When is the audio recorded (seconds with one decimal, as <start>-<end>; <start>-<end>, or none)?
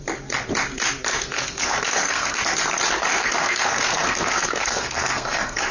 0.0-1.1; 2.4-3.1